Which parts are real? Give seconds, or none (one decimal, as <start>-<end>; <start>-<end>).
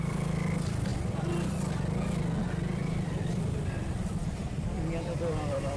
0.9-2.5